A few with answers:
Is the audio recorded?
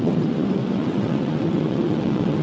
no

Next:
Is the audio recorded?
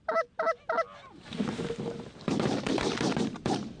yes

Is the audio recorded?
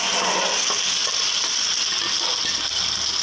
yes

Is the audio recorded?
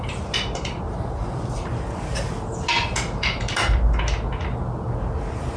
yes